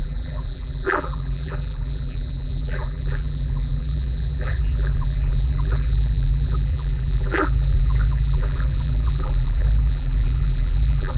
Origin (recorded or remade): remade